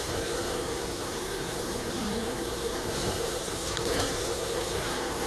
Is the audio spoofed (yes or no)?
yes